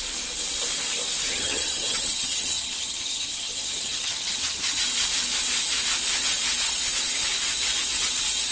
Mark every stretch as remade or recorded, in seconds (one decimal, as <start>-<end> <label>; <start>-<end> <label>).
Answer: 0.0-1.3 recorded; 1.3-4.8 remade; 4.8-8.5 recorded

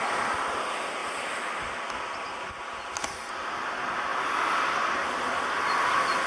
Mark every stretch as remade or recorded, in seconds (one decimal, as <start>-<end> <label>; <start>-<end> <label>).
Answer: 0.0-6.3 recorded

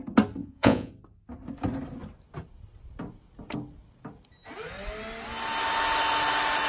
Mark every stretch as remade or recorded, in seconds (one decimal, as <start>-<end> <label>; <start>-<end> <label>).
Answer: 0.0-0.4 recorded; 0.4-0.9 remade; 0.9-6.7 recorded

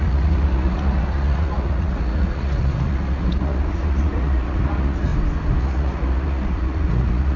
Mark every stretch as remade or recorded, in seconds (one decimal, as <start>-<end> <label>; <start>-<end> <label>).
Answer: 0.0-5.1 remade; 5.1-5.6 recorded; 5.6-7.4 remade

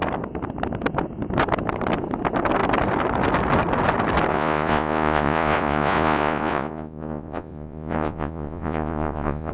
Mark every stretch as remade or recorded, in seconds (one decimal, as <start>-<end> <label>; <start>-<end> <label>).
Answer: 0.0-4.3 recorded; 4.3-9.5 remade

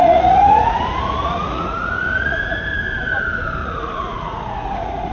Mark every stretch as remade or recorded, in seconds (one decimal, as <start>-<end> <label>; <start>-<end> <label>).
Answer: 0.0-2.6 remade; 2.6-3.6 recorded; 3.6-5.1 remade

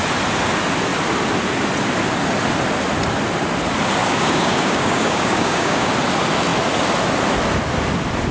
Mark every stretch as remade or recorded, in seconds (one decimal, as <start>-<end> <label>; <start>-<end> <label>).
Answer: 0.0-4.0 recorded; 4.0-5.9 remade; 5.9-8.3 recorded